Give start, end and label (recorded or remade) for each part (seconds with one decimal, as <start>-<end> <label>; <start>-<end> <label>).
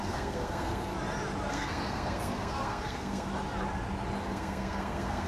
0.0-0.9 remade; 0.9-1.5 recorded; 1.5-3.3 remade; 3.3-4.2 recorded; 4.2-5.3 remade